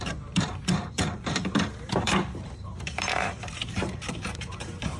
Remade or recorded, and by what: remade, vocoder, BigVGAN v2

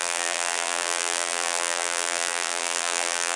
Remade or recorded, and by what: remade, vocoder, BigVGAN v2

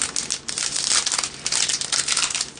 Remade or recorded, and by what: recorded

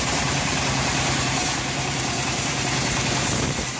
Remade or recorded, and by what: remade, vocoder, BigVGAN v2